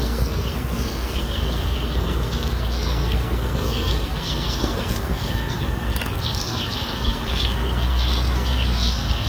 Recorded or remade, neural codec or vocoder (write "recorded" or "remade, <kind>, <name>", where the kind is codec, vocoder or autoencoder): remade, codec, SNAC